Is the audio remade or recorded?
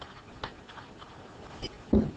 recorded